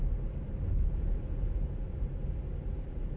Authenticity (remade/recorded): recorded